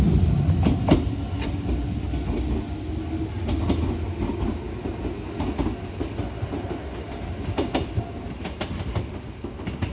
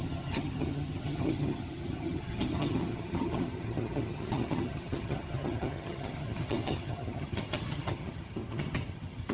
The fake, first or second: second